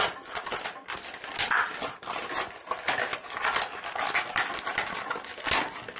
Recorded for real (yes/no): yes